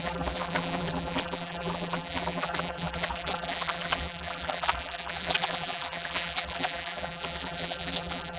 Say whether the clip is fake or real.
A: fake